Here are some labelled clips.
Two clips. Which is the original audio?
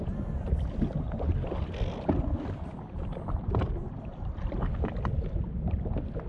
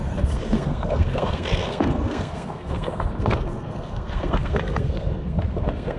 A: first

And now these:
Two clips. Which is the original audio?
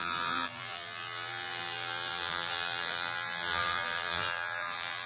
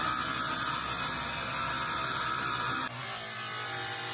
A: second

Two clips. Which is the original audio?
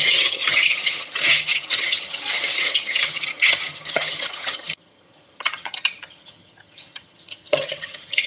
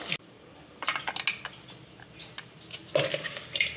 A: second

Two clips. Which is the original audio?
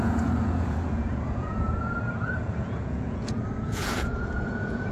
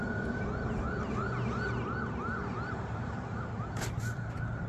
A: second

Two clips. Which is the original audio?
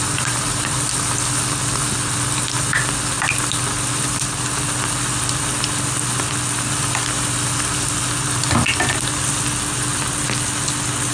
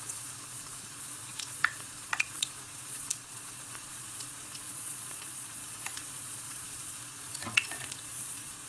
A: first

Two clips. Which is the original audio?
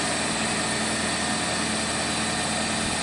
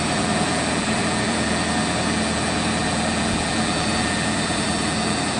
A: first